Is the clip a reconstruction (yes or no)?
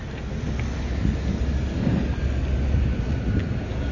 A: no